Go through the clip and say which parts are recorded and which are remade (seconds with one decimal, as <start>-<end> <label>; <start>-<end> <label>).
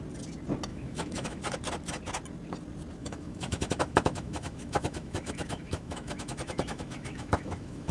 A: 0.0-0.7 recorded; 0.7-1.4 remade; 1.4-3.0 recorded; 3.0-7.9 remade